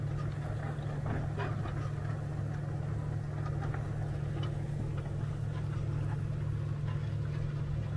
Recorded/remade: recorded